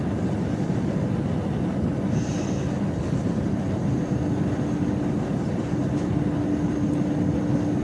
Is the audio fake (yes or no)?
no